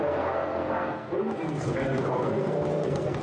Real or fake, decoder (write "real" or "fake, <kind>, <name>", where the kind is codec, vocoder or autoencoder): fake, codec, SNAC